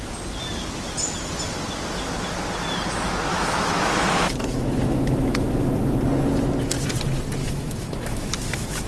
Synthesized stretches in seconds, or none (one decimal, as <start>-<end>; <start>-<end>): 3.3-5.7; 7.4-8.9